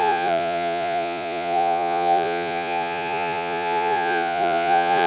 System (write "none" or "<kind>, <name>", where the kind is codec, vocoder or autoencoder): vocoder, Vocos